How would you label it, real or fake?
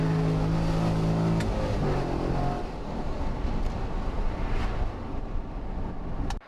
real